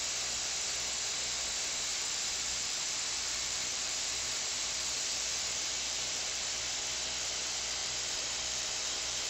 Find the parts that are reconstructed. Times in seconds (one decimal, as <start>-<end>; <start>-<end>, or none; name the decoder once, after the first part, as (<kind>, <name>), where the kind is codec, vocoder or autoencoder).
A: 1.9-6.6 (vocoder, BigVGAN v2); 7.8-9.3